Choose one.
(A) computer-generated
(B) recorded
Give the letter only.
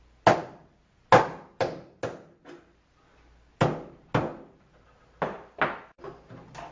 B